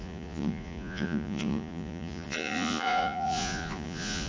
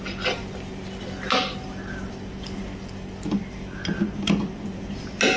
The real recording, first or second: second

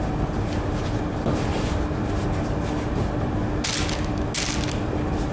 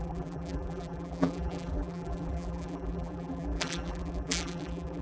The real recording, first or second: first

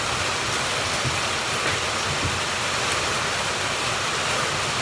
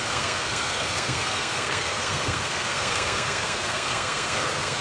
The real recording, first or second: first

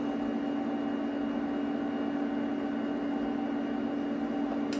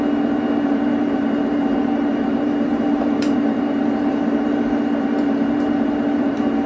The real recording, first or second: first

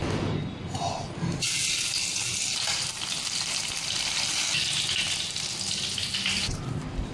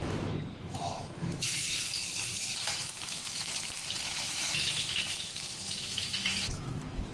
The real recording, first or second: first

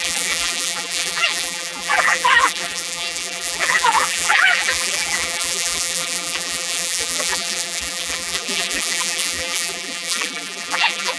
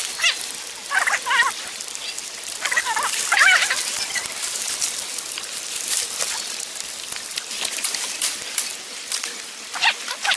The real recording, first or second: second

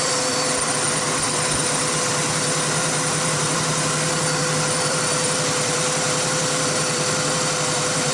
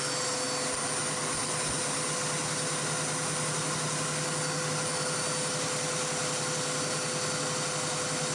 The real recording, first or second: second